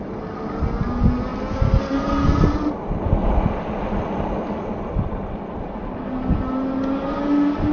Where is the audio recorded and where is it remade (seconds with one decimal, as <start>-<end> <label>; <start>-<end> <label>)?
0.0-3.2 recorded; 3.2-5.8 remade; 5.8-7.7 recorded